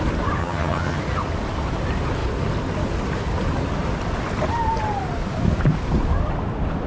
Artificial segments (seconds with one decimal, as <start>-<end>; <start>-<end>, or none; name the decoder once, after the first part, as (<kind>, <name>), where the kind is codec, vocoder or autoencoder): 0.4-1.0 (vocoder, HiFi-GAN)